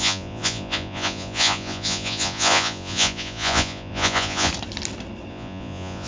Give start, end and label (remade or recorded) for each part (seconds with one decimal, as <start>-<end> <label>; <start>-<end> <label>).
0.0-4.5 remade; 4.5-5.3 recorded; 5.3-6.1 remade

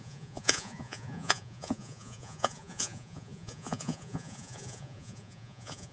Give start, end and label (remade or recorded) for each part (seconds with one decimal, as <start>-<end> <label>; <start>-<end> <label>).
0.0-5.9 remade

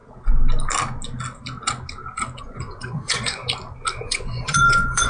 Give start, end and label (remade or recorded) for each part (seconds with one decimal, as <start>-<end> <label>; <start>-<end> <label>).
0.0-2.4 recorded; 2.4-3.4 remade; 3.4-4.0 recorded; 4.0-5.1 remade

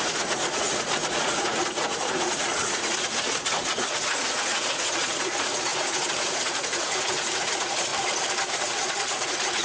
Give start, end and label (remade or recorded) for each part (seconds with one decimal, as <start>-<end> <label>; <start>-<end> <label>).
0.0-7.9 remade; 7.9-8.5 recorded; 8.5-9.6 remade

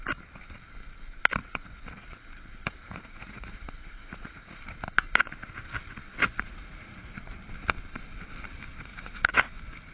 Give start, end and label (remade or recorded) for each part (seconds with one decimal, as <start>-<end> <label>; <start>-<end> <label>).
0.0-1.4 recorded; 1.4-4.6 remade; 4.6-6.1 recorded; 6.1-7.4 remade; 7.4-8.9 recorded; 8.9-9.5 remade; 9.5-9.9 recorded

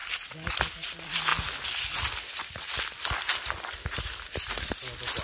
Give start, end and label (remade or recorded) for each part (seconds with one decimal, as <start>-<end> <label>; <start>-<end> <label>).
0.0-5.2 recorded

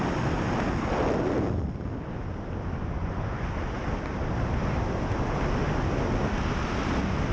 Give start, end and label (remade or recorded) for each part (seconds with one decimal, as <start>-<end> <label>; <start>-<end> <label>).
0.0-3.0 recorded; 3.0-3.8 remade; 3.8-7.3 recorded

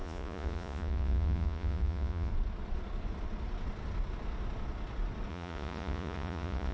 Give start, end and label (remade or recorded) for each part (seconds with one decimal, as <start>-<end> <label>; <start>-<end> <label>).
0.0-2.3 remade; 2.3-5.3 recorded; 5.3-6.7 remade